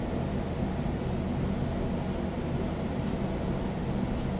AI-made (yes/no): no